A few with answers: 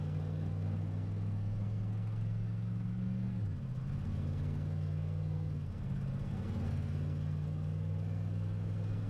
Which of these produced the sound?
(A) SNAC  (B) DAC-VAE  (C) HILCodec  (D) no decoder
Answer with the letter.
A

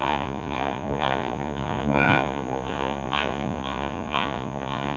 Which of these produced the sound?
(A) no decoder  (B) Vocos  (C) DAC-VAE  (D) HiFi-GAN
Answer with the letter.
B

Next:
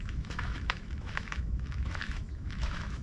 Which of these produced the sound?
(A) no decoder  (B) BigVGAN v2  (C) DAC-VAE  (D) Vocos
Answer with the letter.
C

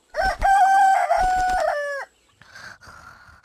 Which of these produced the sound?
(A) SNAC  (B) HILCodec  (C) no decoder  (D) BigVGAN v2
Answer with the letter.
C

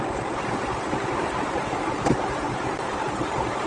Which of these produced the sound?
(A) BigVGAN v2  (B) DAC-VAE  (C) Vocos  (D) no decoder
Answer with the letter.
A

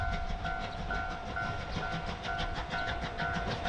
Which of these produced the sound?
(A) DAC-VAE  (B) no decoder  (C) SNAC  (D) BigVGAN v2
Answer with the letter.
B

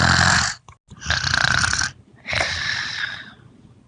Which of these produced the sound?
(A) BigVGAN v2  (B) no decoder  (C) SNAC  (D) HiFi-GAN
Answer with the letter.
B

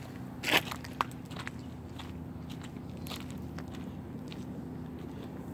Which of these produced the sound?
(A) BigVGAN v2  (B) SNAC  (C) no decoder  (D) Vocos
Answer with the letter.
C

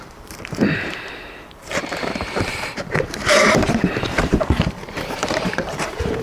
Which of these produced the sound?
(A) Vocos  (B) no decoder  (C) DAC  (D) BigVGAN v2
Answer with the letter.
D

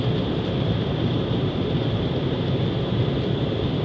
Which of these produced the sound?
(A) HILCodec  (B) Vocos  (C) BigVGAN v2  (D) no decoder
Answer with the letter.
C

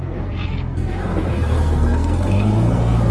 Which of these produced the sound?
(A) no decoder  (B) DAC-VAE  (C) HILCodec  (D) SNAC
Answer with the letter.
D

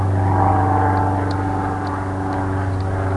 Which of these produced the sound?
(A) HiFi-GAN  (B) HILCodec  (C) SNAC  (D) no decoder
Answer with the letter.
D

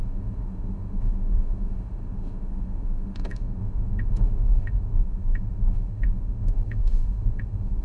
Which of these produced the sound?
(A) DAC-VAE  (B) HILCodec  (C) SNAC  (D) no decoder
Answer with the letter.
A